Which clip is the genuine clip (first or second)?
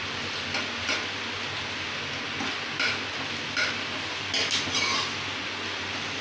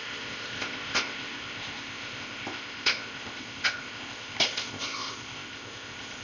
first